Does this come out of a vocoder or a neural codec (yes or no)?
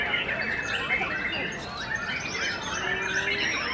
no